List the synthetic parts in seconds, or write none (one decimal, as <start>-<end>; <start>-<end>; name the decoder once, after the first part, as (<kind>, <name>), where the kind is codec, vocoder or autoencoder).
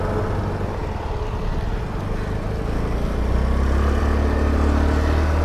none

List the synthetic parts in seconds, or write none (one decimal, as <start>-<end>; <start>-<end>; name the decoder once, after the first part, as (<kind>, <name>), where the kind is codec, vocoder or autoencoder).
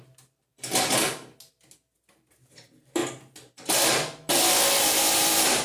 0.0-0.5 (vocoder, BigVGAN v2); 2.4-3.0; 4.8-5.6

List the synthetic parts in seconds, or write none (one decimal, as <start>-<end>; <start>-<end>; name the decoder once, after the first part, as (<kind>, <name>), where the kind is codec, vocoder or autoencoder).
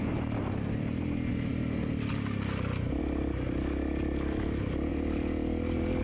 none